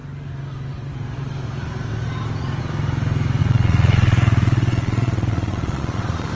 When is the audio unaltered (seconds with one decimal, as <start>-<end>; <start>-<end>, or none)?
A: 0.0-3.4